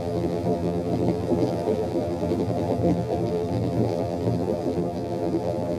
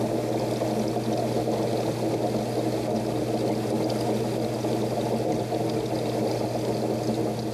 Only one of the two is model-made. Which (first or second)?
first